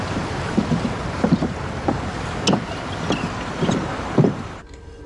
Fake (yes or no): yes